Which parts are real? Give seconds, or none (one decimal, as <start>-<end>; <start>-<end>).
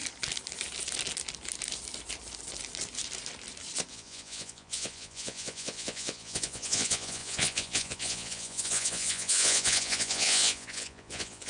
0.0-3.9